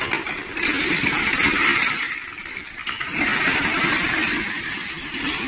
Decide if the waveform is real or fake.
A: fake